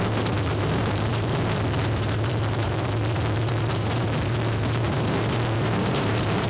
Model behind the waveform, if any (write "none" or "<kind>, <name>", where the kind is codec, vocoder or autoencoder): vocoder, BigVGAN v2